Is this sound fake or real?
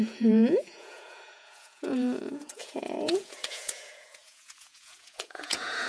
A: fake